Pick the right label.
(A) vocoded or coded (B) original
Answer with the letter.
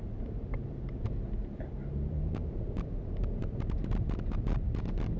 A